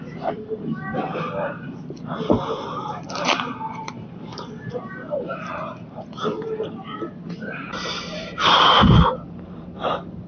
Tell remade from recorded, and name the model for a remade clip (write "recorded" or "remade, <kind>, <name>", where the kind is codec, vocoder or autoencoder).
remade, vocoder, BigVGAN v2